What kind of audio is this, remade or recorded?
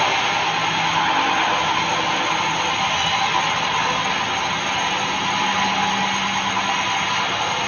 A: recorded